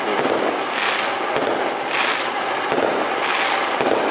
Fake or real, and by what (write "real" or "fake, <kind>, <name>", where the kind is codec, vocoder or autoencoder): real